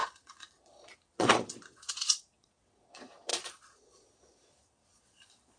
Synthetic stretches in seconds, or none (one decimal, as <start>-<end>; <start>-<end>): 0.0-5.6